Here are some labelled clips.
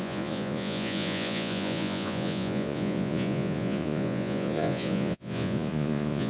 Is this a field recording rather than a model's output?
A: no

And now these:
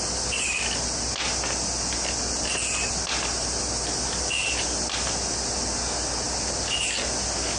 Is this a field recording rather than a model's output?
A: yes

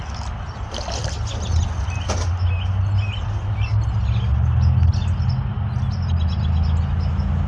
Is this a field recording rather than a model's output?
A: yes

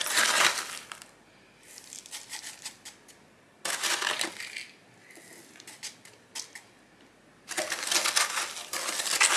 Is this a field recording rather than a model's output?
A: yes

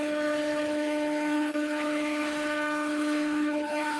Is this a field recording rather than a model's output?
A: no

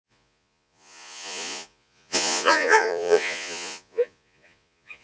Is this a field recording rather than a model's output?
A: no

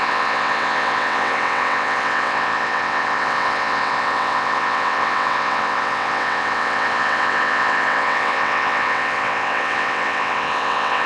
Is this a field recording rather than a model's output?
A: no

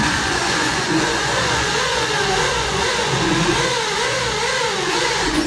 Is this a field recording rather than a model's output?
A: no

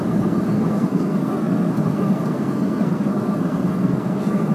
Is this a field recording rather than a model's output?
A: no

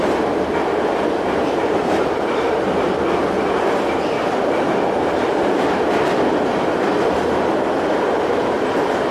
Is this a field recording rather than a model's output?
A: no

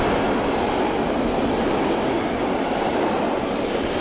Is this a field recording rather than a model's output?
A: yes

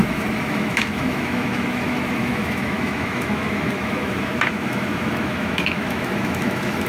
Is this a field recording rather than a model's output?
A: no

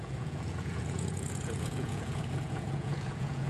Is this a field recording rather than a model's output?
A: no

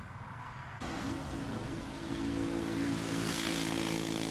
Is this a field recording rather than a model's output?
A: no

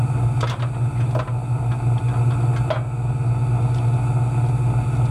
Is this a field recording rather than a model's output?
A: yes